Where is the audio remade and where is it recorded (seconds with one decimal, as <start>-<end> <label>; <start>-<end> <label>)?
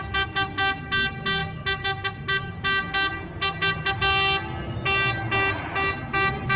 0.0-6.6 recorded